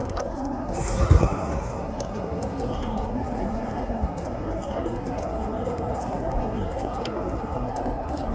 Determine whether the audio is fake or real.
fake